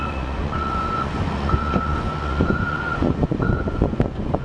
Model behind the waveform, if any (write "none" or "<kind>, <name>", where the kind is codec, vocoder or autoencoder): vocoder, Vocos